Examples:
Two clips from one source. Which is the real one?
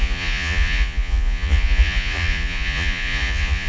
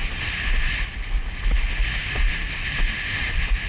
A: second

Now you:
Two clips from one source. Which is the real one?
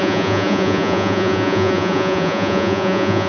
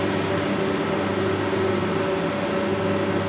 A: second